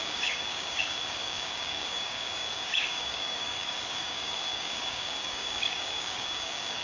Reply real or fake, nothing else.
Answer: fake